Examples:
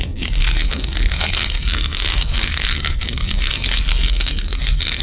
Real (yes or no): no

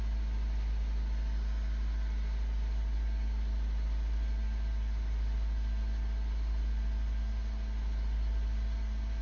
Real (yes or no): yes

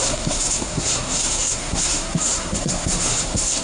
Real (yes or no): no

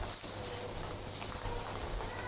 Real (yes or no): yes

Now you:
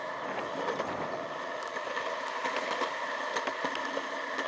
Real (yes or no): yes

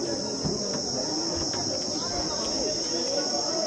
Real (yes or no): yes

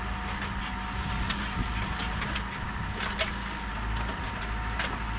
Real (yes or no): yes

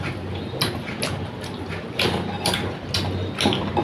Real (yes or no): yes